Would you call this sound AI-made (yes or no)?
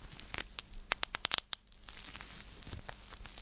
no